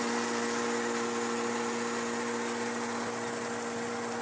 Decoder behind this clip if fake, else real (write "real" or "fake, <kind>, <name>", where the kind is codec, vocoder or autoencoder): real